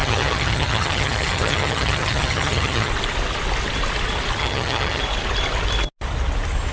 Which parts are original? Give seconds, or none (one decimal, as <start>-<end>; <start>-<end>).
2.9-4.4; 5.0-6.7